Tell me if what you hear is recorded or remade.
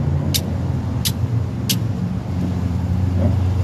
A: recorded